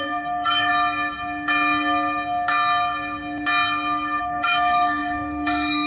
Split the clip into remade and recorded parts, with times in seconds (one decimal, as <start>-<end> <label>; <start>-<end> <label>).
0.0-0.7 remade; 0.7-4.2 recorded; 4.2-5.9 remade